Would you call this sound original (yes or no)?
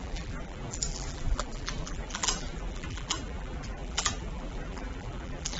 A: no